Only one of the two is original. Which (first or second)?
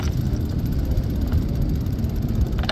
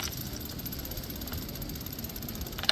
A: first